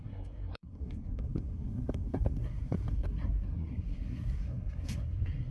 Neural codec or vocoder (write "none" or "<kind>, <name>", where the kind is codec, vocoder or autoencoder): codec, SNAC